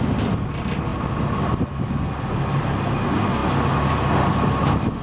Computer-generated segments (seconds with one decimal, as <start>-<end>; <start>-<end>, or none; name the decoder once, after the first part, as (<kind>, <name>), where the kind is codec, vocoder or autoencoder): none